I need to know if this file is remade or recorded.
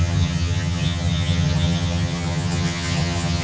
remade